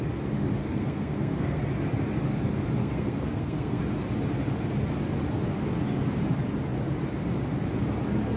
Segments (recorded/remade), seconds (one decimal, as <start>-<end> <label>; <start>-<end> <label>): 0.0-0.6 recorded; 0.6-1.6 remade; 1.6-2.8 recorded; 2.8-3.8 remade; 3.8-8.4 recorded